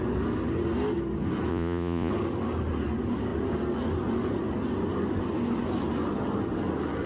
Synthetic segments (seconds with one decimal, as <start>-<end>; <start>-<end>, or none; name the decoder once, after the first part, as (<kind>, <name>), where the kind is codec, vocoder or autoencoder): 1.5-2.1 (vocoder, Vocos)